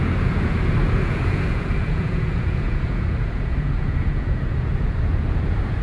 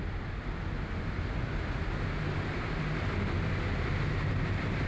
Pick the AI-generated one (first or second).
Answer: first